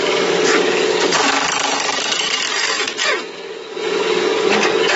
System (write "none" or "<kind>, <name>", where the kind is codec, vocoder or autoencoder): codec, DAC